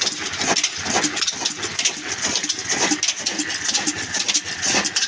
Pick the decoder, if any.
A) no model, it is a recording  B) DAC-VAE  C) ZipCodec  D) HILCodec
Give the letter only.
A